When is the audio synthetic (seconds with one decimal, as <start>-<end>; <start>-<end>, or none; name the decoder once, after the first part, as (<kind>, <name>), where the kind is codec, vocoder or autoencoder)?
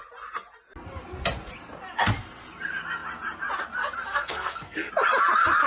4.1-4.9 (codec, SNAC)